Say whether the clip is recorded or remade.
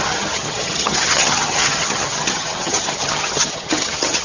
remade